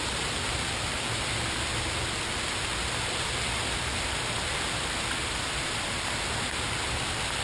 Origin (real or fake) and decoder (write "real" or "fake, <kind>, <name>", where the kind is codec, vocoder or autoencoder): real